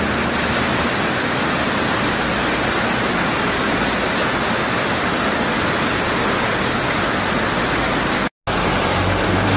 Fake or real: real